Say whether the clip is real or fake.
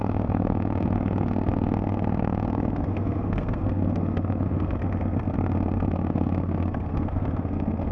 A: fake